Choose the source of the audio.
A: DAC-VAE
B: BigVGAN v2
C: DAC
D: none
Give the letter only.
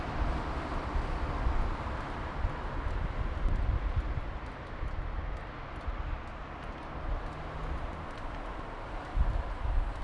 D